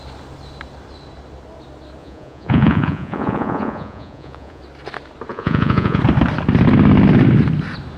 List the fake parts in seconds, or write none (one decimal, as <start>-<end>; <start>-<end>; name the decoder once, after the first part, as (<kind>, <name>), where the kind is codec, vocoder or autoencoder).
2.0-4.6 (vocoder, Vocos); 5.3-6.0